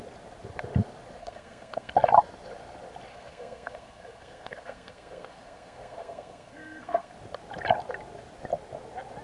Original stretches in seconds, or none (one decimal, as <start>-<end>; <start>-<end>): 0.0-1.2; 1.9-3.1; 7.1-9.2